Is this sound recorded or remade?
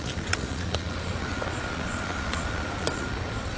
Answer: remade